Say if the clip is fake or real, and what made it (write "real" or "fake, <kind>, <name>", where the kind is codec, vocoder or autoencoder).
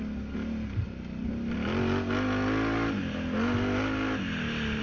real